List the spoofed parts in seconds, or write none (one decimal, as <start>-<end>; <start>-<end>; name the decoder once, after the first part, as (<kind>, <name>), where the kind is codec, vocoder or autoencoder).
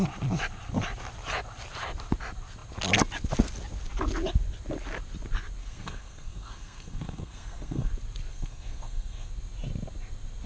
5.6-7.9 (codec, SNAC); 8.3-9.3